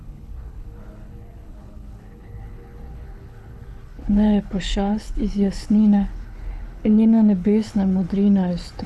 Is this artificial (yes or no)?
yes